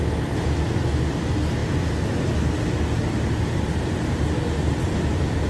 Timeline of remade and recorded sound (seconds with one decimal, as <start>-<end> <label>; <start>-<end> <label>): 0.0-5.5 recorded